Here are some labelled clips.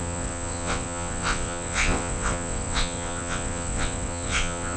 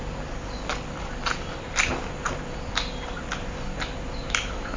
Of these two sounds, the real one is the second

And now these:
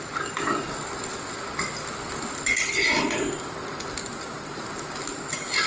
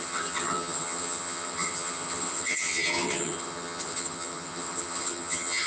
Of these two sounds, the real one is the first